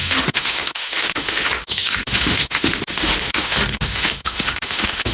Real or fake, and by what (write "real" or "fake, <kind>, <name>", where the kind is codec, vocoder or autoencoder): fake, autoencoder, DAC-VAE